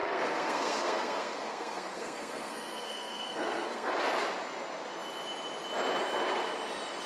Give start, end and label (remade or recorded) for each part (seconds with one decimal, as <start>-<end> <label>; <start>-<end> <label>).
0.0-4.0 remade; 4.0-7.1 recorded